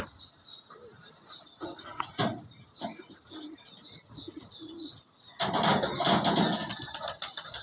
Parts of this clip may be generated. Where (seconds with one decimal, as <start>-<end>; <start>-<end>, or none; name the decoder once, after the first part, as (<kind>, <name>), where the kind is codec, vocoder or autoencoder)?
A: 0.9-1.4 (vocoder, BigVGAN v2); 1.9-5.3